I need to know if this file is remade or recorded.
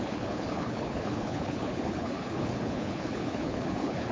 remade